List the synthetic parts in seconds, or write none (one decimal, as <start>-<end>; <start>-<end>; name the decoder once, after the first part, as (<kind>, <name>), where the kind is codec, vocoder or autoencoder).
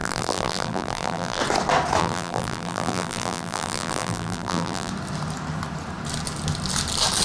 0.0-1.4 (vocoder, BigVGAN v2); 2.0-4.9